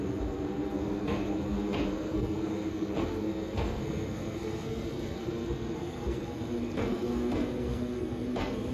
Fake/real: fake